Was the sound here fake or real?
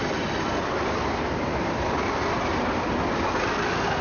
fake